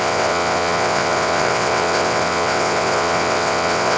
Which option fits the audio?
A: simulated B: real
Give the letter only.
A